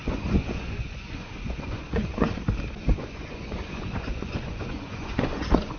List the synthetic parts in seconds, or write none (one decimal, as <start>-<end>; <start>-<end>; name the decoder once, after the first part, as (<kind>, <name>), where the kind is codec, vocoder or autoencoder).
0.0-2.4 (vocoder, Vocos); 2.9-5.8